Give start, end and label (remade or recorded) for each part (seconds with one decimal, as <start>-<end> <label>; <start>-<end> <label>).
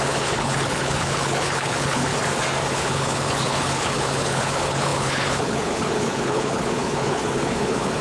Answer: 0.0-2.1 remade; 2.1-2.7 recorded; 2.7-8.0 remade